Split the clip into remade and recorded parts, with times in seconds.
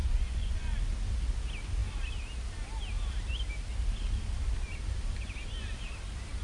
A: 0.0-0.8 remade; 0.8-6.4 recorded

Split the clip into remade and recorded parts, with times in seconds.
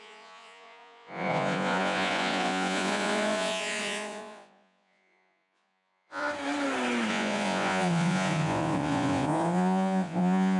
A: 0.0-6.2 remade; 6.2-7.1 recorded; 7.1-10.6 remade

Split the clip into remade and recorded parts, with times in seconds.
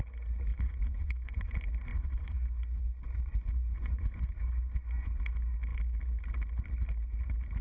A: 0.0-0.5 recorded; 0.5-1.5 remade; 1.5-1.9 recorded; 1.9-5.1 remade; 5.1-7.6 recorded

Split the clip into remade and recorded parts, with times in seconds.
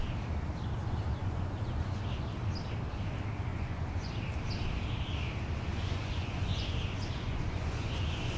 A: 0.0-1.2 recorded; 1.2-2.0 remade; 2.0-3.5 recorded; 3.5-4.1 remade; 4.1-5.7 recorded; 5.7-8.4 remade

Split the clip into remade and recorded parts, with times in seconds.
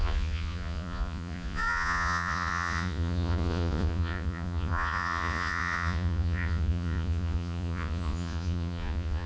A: 0.0-9.3 remade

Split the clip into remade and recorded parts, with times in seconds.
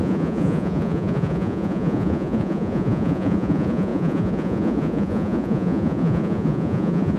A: 0.0-7.2 remade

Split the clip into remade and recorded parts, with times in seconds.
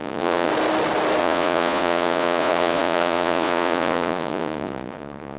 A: 0.0-0.5 remade; 0.5-1.2 recorded; 1.2-5.4 remade